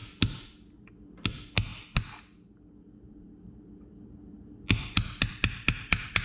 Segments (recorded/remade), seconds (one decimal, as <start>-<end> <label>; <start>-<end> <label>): 0.0-6.2 recorded